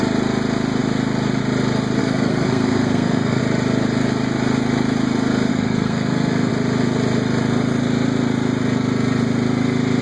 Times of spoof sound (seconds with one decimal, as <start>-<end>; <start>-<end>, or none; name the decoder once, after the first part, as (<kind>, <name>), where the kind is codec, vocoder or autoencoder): 2.0-3.4 (codec, SNAC); 5.5-6.5